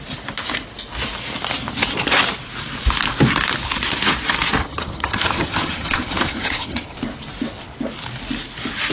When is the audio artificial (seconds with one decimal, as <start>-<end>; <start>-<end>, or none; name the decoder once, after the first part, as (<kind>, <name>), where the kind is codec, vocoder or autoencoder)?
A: 4.6-7.0 (vocoder, HiFi-GAN)

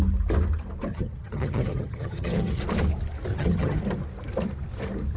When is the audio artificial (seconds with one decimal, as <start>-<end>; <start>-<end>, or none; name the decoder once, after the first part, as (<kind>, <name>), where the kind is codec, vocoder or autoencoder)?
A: 0.9-2.6 (vocoder, HiFi-GAN); 3.3-3.8

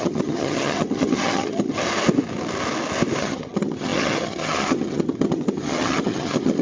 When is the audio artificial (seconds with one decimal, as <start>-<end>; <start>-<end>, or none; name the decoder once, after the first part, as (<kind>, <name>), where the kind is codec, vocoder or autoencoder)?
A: 0.0-1.8 (vocoder, HiFi-GAN); 3.2-6.6

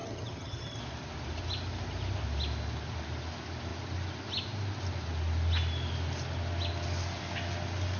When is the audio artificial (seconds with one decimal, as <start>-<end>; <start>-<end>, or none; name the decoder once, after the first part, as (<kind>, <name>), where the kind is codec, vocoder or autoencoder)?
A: 0.0-0.8 (vocoder, HiFi-GAN)

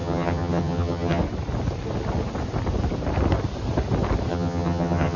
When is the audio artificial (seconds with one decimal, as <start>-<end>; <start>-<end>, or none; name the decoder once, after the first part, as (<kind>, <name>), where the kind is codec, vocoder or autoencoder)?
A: 0.0-1.2 (vocoder, HiFi-GAN); 4.3-5.2